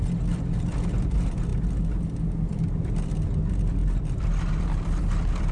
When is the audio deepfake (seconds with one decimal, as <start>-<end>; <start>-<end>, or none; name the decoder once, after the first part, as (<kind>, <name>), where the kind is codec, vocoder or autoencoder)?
none